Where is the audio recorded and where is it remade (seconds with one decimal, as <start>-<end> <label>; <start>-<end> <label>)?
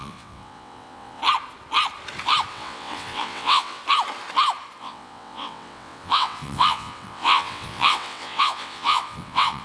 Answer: 0.0-1.2 remade; 1.2-2.5 recorded; 2.5-3.8 remade; 3.8-4.8 recorded; 4.8-9.6 remade